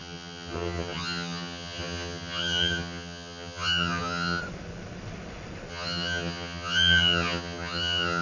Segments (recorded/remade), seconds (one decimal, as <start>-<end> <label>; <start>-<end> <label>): 0.0-4.4 remade; 4.4-5.7 recorded; 5.7-8.2 remade